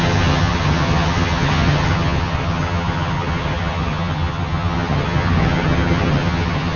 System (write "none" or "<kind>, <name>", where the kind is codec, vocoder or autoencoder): vocoder, HiFi-GAN